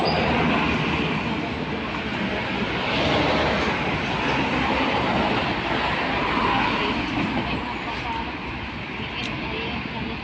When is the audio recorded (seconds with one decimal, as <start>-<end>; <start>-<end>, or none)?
0.0-10.2